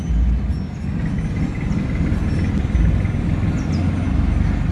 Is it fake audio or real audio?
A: real